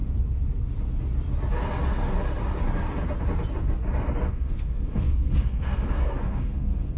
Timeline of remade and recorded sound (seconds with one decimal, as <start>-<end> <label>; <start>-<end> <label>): 0.0-4.2 recorded; 4.2-7.0 remade